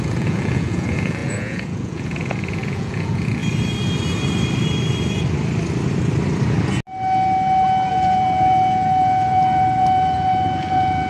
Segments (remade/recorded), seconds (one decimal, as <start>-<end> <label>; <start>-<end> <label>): 0.0-3.4 remade; 3.4-7.9 recorded; 7.9-11.1 remade